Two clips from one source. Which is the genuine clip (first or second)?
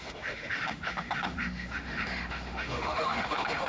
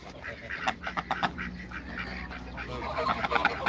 second